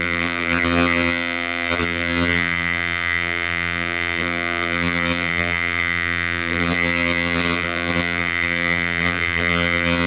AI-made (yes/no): yes